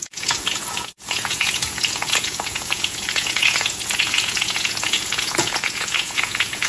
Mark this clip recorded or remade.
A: remade